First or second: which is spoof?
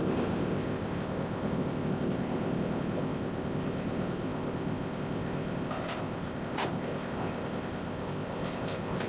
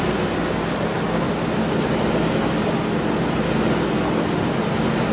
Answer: first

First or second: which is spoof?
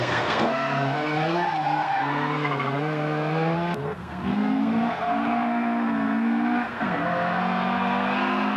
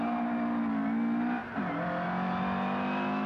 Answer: first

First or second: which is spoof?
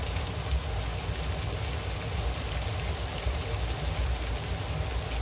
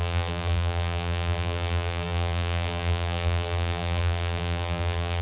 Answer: second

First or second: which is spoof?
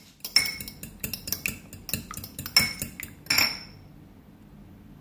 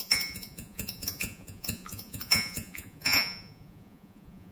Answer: second